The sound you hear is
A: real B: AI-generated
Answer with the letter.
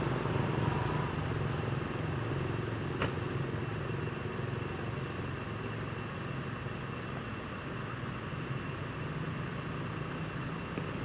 A